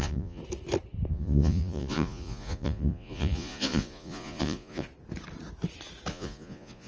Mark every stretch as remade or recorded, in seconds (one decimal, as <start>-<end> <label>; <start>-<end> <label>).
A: 0.0-0.4 remade; 0.4-1.1 recorded; 1.1-4.9 remade; 4.9-6.1 recorded; 6.1-6.9 remade

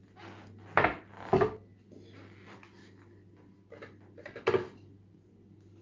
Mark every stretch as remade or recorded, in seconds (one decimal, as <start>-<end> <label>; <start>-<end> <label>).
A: 0.0-5.8 recorded

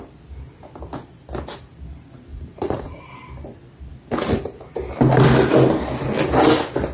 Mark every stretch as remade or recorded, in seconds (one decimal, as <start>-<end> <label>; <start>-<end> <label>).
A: 0.0-2.3 recorded; 2.3-3.1 remade; 3.1-6.9 recorded

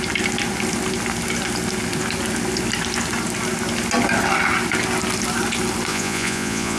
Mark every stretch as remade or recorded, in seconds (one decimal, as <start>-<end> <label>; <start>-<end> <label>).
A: 0.0-5.9 recorded; 5.9-6.8 remade

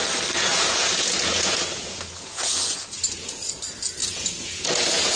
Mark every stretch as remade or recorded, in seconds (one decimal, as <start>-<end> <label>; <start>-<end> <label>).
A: 0.0-0.5 recorded; 0.5-3.6 remade; 3.6-4.0 recorded; 4.0-5.2 remade

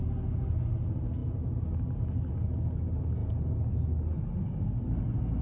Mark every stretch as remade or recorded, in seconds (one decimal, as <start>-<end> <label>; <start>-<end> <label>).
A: 0.0-5.4 recorded

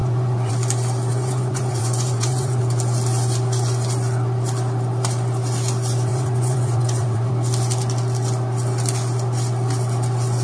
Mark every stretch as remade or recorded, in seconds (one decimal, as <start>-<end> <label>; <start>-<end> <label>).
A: 0.0-0.5 remade; 0.5-1.1 recorded; 1.1-2.6 remade; 2.6-6.1 recorded; 6.1-7.3 remade; 7.3-10.4 recorded